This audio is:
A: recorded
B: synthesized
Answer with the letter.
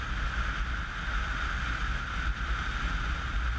A